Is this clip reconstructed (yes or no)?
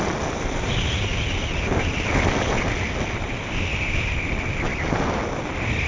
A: no